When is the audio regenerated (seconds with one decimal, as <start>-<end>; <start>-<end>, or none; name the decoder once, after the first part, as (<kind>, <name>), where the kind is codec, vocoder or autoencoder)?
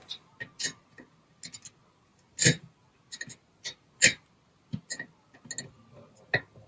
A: none